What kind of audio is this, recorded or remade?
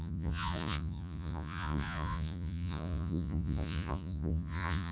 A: remade